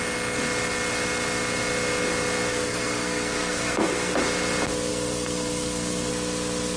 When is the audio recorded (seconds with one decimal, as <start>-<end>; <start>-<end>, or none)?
0.0-2.5; 4.2-4.9; 6.1-6.8